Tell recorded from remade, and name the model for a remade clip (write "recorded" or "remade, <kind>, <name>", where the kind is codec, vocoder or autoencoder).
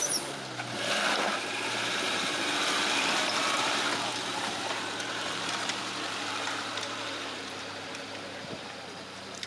remade, vocoder, BigVGAN v2